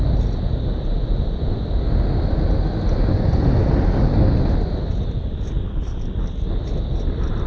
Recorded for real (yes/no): yes